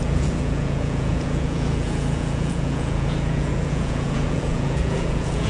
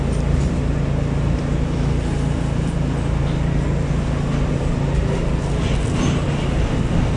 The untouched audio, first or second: second